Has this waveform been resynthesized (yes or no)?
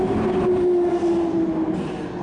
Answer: no